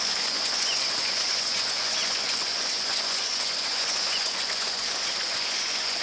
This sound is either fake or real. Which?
fake